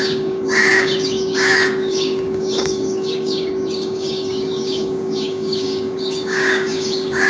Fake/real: fake